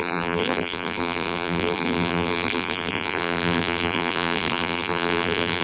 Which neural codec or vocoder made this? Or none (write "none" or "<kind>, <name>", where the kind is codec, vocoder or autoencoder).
vocoder, BigVGAN v2